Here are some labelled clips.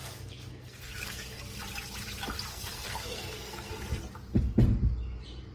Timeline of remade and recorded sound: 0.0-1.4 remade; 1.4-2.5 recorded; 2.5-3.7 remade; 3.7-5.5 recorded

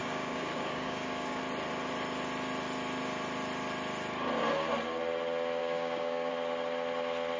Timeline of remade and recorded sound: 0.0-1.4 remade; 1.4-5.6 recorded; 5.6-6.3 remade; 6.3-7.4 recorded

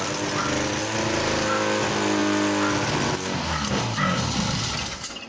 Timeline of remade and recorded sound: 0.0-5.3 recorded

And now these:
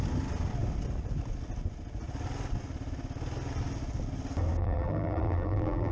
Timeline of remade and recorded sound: 0.0-4.6 recorded; 4.6-5.9 remade

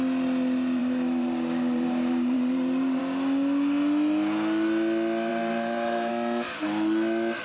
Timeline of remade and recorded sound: 0.0-0.8 recorded; 0.8-3.0 remade; 3.0-5.3 recorded; 5.3-6.1 remade; 6.1-7.4 recorded

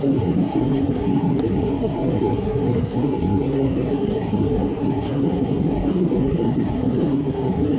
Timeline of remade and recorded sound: 0.0-7.8 remade